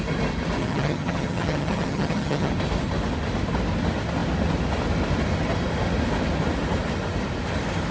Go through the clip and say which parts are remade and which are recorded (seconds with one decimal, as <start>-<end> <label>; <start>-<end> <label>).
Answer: 0.0-0.6 recorded; 0.6-2.5 remade; 2.5-7.9 recorded